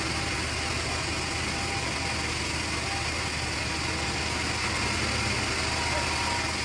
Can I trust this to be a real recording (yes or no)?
yes